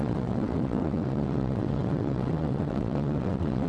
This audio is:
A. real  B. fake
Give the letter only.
B